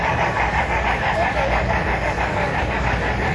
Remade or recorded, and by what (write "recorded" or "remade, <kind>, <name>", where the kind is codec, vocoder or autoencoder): remade, codec, DAC